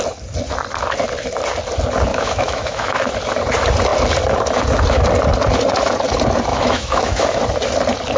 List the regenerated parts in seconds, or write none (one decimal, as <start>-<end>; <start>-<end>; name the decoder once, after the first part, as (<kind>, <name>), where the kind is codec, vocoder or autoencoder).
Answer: 2.1-3.1 (autoencoder, DAC-VAE); 6.5-7.4